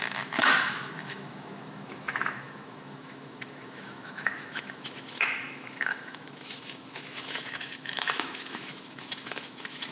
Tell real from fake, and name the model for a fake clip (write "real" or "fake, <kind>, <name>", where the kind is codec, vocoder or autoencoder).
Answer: fake, autoencoder, DAC-VAE